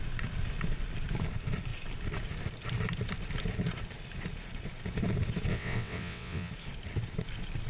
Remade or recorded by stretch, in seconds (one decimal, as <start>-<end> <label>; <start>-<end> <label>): 0.0-5.5 recorded; 5.5-6.5 remade; 6.5-7.7 recorded